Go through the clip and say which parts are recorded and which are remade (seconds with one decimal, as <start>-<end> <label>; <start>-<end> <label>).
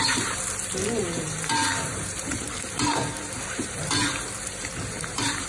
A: 0.0-5.5 remade